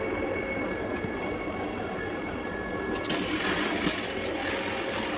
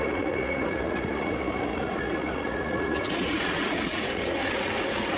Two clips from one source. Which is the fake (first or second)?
second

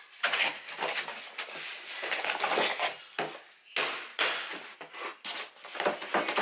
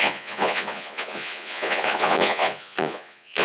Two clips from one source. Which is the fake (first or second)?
second